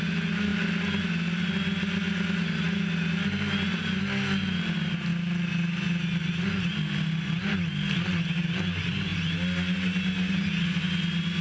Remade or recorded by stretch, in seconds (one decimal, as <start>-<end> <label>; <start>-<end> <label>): 0.0-11.4 recorded